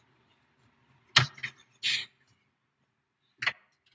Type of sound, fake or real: real